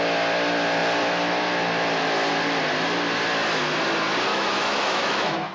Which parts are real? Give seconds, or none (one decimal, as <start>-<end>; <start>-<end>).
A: 0.0-4.3